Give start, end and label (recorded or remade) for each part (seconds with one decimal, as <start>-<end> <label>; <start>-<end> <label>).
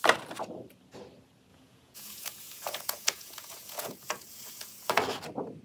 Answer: 0.0-1.5 recorded; 1.5-4.9 remade; 4.9-5.6 recorded